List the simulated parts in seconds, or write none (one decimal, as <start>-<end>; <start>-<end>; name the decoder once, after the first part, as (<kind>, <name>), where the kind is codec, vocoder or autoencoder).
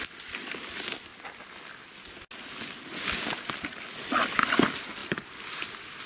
none